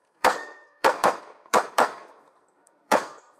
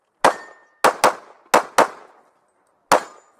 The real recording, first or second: second